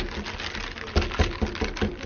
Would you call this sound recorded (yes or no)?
yes